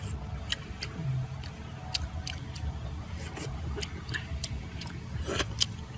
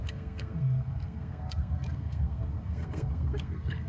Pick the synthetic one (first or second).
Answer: second